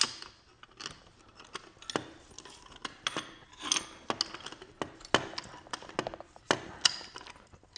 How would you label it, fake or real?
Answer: real